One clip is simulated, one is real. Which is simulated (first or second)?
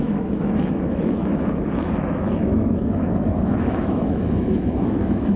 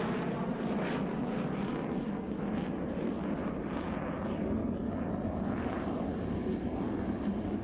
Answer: first